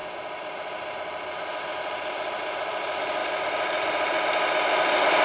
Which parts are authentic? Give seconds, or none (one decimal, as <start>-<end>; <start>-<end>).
0.0-1.8